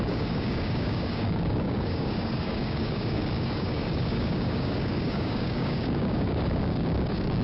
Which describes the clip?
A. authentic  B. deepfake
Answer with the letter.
B